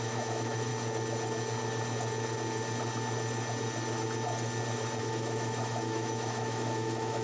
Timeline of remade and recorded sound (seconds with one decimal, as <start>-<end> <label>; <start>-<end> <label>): 0.0-0.7 remade; 0.7-5.0 recorded; 5.0-7.2 remade